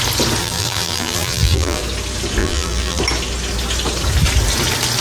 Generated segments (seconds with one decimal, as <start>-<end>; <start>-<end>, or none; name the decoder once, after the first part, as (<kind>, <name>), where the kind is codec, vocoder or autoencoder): 0.4-1.8 (vocoder, BigVGAN v2); 2.4-3.0